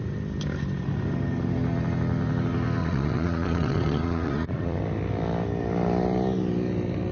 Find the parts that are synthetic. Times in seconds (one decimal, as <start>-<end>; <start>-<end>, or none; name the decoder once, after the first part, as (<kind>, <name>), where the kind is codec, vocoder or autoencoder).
2.8-4.8 (vocoder, Vocos)